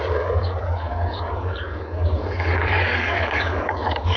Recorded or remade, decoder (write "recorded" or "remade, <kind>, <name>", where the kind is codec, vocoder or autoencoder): remade, codec, DAC